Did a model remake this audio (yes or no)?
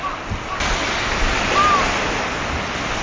no